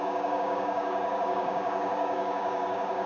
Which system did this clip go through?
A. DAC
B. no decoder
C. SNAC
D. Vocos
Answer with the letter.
A